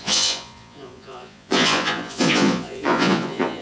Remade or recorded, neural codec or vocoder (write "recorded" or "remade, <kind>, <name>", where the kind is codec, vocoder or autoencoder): remade, vocoder, Vocos